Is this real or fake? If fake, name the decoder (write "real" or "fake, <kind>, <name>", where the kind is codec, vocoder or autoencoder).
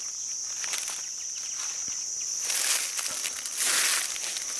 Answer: real